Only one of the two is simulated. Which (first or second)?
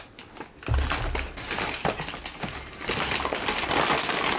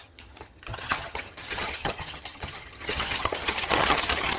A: second